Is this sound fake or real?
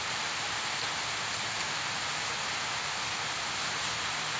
real